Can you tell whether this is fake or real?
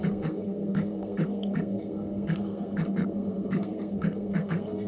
fake